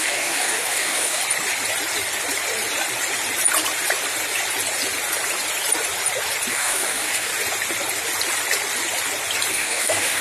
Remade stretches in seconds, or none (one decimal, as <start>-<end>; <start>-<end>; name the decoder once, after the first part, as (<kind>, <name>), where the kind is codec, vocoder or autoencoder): 0.0-1.2 (codec, DAC); 6.5-7.3; 9.5-10.2